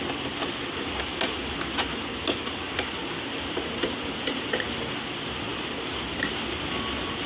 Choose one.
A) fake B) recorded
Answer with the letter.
B